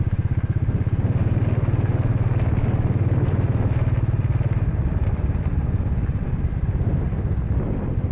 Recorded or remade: recorded